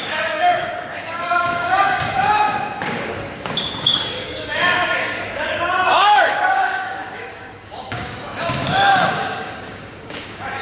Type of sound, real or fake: fake